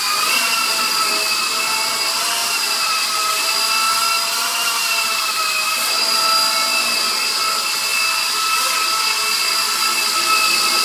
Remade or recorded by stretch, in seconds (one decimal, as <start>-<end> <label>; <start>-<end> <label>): 0.0-2.4 recorded; 2.4-3.5 remade; 3.5-4.5 recorded; 4.5-5.4 remade; 5.4-10.8 recorded